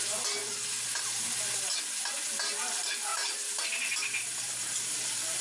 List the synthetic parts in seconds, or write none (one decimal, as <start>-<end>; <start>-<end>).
0.4-0.9; 3.1-5.4